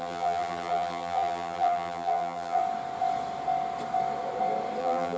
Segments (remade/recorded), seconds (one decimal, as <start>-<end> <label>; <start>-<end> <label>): 0.0-2.6 remade; 2.6-4.8 recorded; 4.8-5.2 remade